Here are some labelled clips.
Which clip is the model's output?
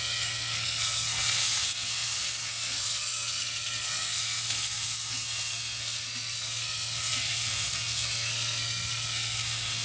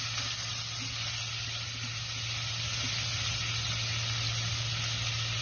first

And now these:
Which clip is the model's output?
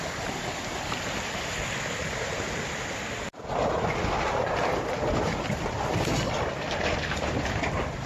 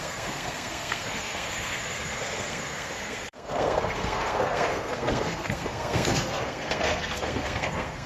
second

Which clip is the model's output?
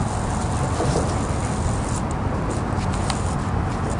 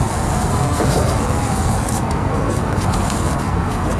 second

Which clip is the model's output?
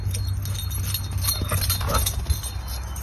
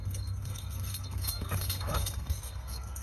second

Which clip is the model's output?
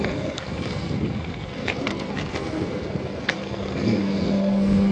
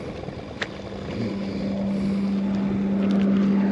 first